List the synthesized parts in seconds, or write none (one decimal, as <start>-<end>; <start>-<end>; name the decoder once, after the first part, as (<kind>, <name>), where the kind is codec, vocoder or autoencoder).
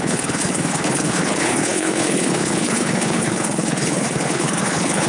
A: 0.0-5.1 (codec, HILCodec)